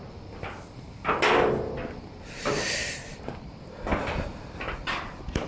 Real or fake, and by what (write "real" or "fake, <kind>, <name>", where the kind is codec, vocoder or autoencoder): real